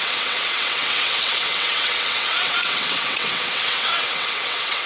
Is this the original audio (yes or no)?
no